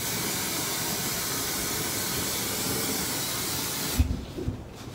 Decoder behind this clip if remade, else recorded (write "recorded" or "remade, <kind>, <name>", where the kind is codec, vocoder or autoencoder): recorded